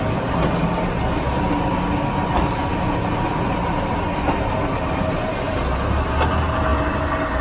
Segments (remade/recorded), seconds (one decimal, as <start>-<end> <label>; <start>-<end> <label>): 0.0-7.4 recorded